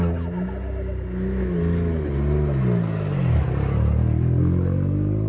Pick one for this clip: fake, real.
real